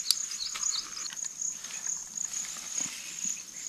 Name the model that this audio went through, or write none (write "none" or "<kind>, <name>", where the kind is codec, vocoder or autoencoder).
none